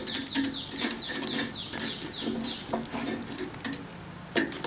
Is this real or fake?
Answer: real